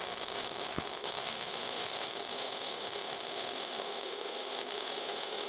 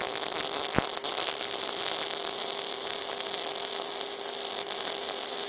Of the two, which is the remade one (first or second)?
first